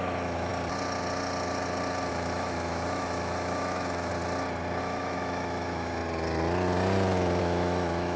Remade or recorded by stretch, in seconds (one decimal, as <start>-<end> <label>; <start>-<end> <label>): 0.0-0.5 remade; 0.5-2.1 recorded; 2.1-4.1 remade; 4.1-4.8 recorded; 4.8-6.0 remade; 6.0-7.4 recorded; 7.4-8.2 remade